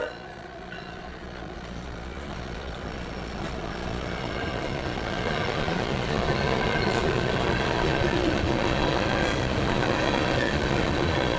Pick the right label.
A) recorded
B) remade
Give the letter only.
B